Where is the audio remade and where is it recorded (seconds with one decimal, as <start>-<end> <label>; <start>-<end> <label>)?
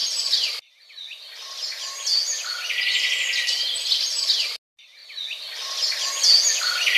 0.0-7.0 recorded